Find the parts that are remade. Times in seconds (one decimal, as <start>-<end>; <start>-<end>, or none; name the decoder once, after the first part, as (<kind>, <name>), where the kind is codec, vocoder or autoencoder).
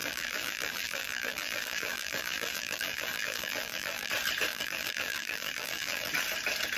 0.0-4.1 (vocoder, BigVGAN v2); 4.5-6.1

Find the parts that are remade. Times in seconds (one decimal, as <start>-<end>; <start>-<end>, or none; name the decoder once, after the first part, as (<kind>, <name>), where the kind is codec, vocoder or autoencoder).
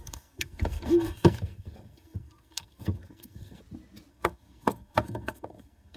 0.0-3.6 (codec, SNAC); 4.1-6.0